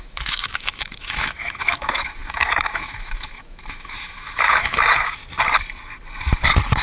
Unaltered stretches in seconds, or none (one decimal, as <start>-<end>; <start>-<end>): 5.2-6.8